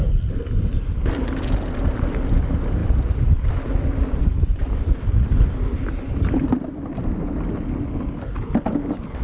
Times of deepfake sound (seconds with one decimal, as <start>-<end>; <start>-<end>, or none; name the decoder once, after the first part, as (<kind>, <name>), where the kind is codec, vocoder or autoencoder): none